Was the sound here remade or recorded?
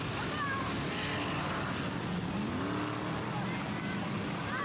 recorded